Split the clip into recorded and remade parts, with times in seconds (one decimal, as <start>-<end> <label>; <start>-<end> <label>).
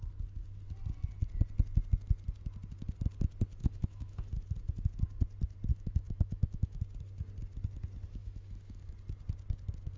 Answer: 0.0-3.6 recorded; 3.6-4.2 remade; 4.2-5.7 recorded; 5.7-6.8 remade; 6.8-8.2 recorded; 8.2-8.8 remade; 8.8-10.0 recorded